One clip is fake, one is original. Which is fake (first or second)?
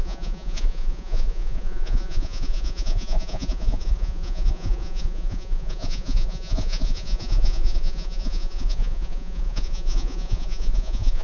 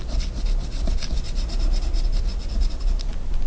first